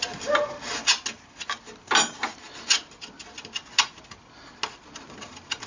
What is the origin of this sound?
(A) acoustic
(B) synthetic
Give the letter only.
A